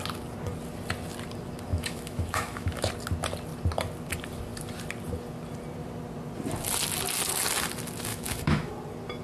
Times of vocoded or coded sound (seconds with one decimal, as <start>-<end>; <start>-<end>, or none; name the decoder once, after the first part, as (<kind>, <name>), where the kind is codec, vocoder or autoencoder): 1.7-2.9 (autoencoder, DAC-VAE); 8.1-8.7